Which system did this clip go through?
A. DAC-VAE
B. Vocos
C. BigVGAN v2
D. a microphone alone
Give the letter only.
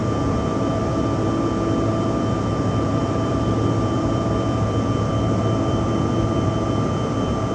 C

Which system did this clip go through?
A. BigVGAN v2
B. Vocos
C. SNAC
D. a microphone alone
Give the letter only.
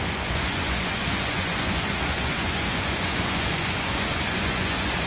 B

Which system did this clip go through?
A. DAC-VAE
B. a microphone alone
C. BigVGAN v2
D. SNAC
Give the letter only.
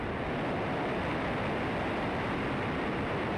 B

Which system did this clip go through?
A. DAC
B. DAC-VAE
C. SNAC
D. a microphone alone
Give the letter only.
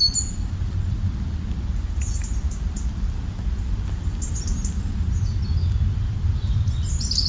D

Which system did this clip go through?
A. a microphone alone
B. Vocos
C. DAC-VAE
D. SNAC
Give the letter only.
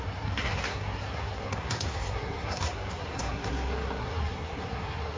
D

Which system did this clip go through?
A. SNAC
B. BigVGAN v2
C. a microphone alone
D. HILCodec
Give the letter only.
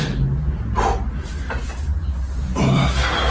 C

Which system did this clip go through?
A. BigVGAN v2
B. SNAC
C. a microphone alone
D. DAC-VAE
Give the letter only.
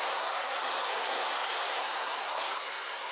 B